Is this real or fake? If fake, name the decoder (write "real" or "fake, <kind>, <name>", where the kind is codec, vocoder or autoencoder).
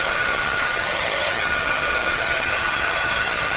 fake, vocoder, HiFi-GAN